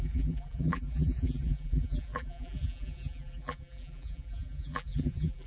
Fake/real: fake